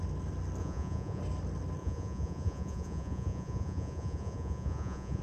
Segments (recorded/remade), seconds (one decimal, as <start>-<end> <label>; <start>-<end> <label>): 0.0-0.6 recorded; 0.6-1.2 remade; 1.2-1.8 recorded; 1.8-5.2 remade